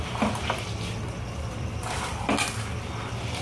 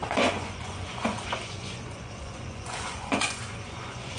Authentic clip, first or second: first